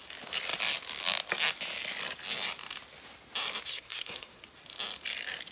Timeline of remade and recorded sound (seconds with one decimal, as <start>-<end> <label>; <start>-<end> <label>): 0.0-3.7 recorded; 3.7-4.4 remade; 4.4-5.5 recorded